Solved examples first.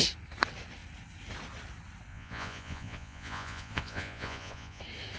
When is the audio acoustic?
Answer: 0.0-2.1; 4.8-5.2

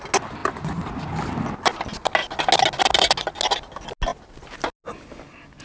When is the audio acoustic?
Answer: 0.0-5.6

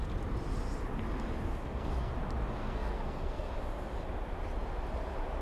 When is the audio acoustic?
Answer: 0.0-1.5; 2.1-2.6; 3.5-5.4

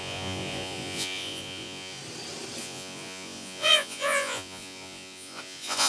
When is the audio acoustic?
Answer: 2.0-2.6

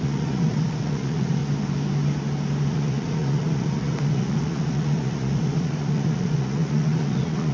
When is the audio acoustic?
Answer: 1.4-2.7

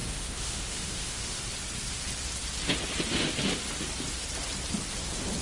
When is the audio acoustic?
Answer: 1.4-5.4

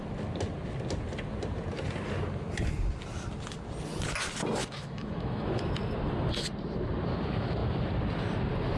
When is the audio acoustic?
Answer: 0.0-4.6; 5.7-8.8